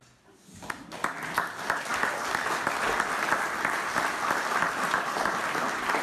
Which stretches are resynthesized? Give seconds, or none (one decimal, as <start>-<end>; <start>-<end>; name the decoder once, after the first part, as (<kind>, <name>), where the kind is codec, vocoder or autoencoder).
none